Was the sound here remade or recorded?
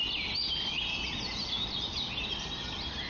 recorded